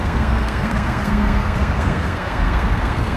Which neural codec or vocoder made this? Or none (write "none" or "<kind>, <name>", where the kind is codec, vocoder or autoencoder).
codec, SNAC